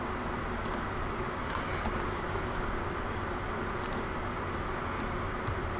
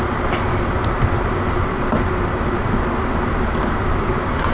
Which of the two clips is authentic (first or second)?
first